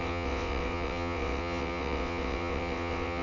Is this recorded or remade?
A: remade